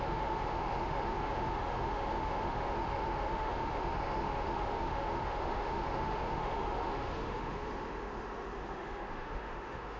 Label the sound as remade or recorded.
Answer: remade